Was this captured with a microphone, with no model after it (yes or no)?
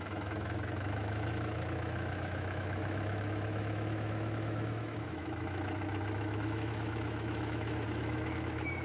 no